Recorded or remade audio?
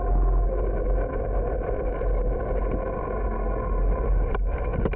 recorded